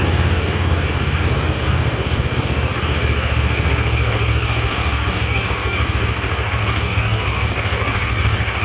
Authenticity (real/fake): fake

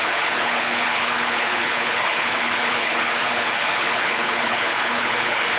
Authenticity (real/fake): fake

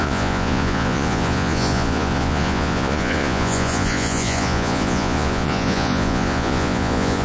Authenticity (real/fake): fake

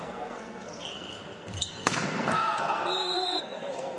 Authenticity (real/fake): fake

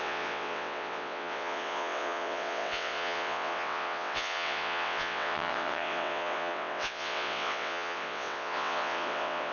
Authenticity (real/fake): fake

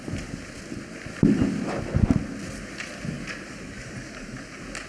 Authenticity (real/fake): real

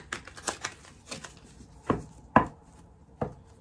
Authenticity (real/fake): real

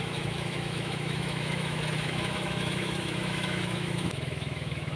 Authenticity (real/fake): fake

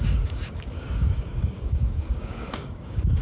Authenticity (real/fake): fake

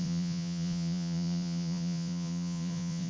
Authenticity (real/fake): fake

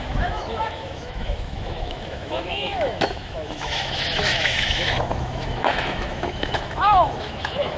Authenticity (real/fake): fake